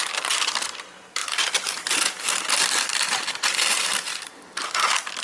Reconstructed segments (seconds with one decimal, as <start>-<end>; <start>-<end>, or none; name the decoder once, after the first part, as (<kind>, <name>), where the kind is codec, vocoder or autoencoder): none